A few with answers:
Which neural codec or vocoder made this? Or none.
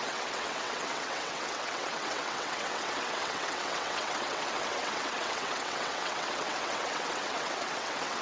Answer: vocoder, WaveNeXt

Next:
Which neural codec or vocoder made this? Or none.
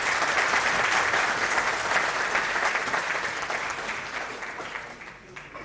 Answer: none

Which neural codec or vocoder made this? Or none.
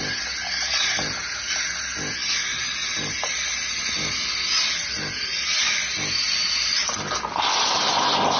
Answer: none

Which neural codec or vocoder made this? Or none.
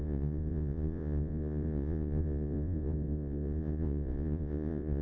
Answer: vocoder, Vocos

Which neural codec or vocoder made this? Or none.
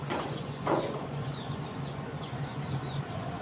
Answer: vocoder, Vocos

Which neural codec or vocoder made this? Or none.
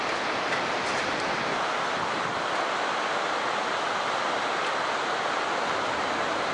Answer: none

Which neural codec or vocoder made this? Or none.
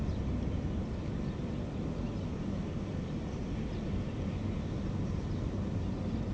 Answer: none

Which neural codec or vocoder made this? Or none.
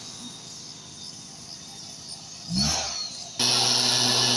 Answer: none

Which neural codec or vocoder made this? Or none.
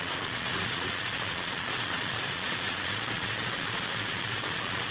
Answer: vocoder, Vocos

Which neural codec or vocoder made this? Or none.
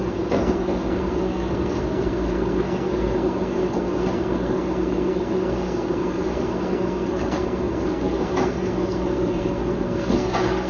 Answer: codec, SNAC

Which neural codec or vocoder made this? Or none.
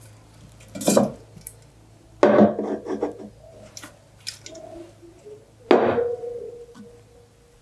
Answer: none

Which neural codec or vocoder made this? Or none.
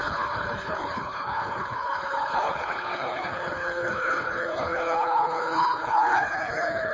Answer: codec, HILCodec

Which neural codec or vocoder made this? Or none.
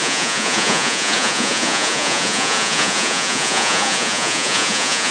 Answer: vocoder, Vocos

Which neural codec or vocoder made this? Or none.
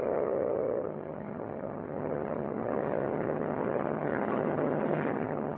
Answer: vocoder, HiFi-GAN